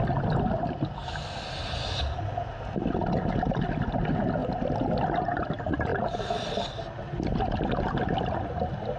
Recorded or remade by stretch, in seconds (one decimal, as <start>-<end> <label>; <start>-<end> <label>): 0.0-9.0 recorded